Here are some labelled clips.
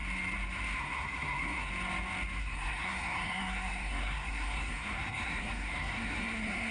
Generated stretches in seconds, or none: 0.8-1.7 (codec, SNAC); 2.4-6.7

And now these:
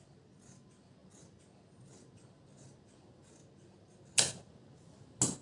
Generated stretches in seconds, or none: none

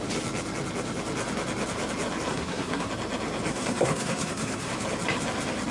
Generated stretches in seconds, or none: 2.3-2.9 (codec, SNAC); 3.5-4.7

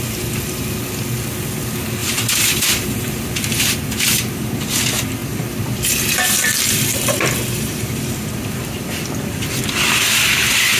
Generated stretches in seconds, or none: 2.0-3.4 (vocoder, BigVGAN v2); 5.2-9.6

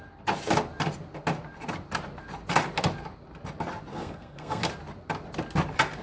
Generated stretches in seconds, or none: 3.9-4.6 (codec, SNAC)

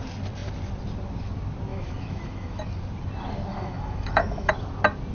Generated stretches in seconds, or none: 1.7-2.6 (autoencoder, DAC-VAE); 3.5-4.5

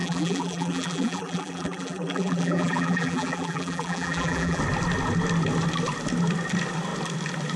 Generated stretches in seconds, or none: 0.0-4.6 (vocoder, BigVGAN v2)

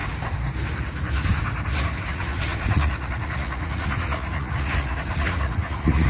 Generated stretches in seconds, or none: 2.1-6.1 (vocoder, Vocos)